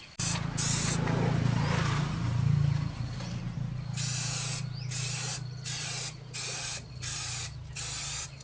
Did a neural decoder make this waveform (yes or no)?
no